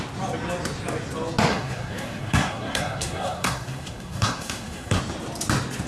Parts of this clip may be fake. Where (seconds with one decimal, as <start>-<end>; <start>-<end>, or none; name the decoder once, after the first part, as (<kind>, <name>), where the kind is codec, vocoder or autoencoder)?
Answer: 1.5-5.0 (codec, SNAC)